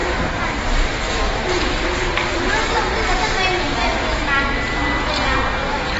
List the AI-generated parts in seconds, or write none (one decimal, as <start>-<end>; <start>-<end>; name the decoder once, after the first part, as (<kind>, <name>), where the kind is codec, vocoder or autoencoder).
0.0-3.6 (vocoder, BigVGAN v2)